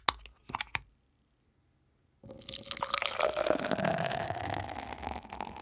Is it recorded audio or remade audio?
recorded